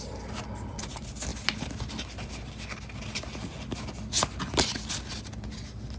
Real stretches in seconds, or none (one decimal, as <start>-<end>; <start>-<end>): 0.0-6.0